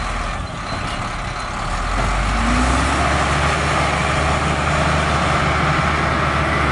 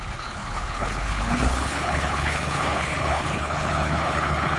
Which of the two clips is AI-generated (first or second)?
second